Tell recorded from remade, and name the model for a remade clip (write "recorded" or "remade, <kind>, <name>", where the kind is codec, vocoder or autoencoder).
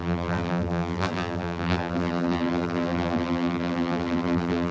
remade, vocoder, BigVGAN v2